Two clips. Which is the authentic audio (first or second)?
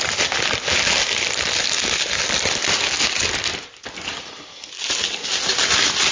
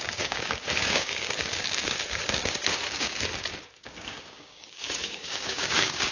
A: first